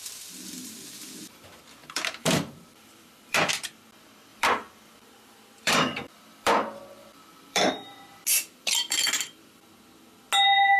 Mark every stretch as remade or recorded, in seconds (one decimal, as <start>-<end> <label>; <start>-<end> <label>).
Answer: 0.0-1.8 recorded; 1.8-3.5 remade; 3.5-4.3 recorded; 4.3-9.6 remade; 9.6-10.8 recorded